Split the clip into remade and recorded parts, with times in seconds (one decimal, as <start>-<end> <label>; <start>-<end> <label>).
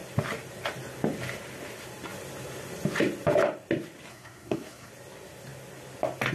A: 0.0-4.1 recorded; 4.1-4.9 remade; 4.9-6.3 recorded